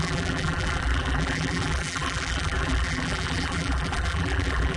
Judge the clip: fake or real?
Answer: fake